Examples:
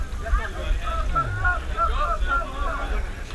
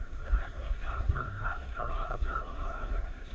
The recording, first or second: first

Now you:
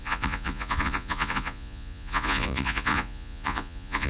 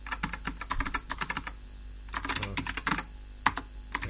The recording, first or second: second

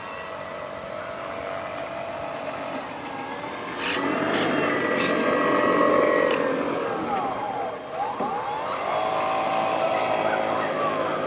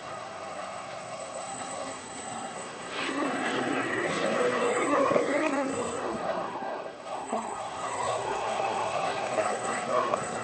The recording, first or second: first